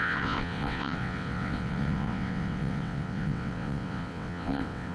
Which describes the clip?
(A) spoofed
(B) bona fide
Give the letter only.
A